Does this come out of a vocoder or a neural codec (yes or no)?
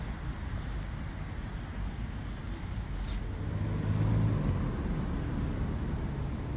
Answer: no